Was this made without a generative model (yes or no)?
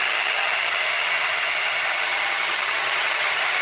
no